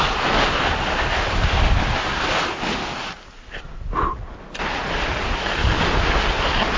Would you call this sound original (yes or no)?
yes